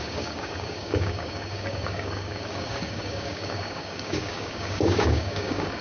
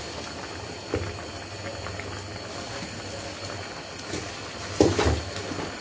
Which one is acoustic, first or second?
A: second